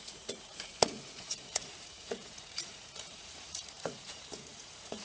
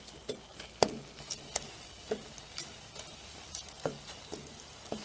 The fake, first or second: first